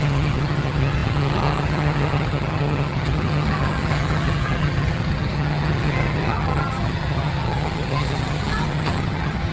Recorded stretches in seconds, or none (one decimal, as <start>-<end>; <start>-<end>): none